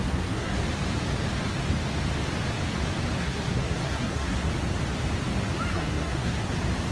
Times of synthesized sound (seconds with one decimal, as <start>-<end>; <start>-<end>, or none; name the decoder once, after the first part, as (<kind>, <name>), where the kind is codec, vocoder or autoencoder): 0.0-0.6 (codec, SNAC); 3.2-4.5; 5.7-6.5